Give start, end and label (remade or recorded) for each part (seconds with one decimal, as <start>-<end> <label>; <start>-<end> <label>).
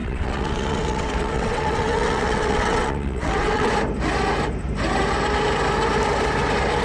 0.0-3.7 remade; 3.7-6.8 recorded